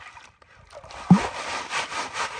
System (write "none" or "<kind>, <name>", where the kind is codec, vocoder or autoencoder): none